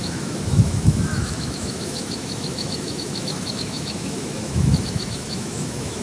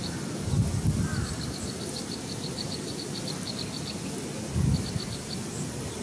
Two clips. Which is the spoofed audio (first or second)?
first